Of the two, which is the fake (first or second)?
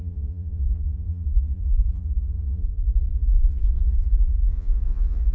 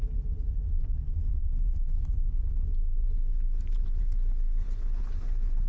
first